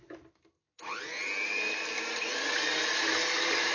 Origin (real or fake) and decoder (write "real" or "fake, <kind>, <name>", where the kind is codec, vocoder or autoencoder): real